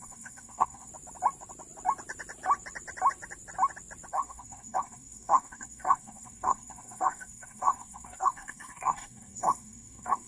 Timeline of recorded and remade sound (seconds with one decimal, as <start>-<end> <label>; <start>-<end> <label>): 0.0-0.9 remade; 0.9-4.1 recorded; 4.1-10.3 remade